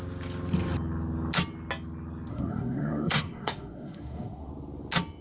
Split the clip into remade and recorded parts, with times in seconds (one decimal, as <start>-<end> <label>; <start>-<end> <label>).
0.0-2.3 recorded; 2.3-4.5 remade; 4.5-5.2 recorded